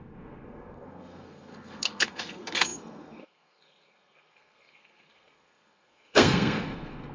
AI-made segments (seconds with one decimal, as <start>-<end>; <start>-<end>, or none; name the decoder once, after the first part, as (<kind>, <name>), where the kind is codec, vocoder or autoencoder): 0.0-7.1 (codec, SNAC)